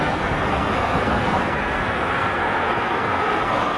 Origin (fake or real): fake